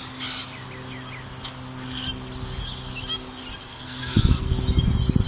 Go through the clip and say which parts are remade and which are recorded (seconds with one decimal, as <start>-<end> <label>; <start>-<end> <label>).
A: 0.0-3.6 recorded; 3.6-4.5 remade; 4.5-5.3 recorded